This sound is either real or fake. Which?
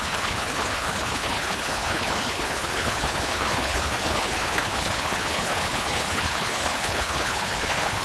fake